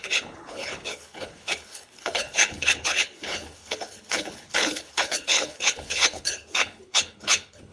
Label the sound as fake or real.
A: fake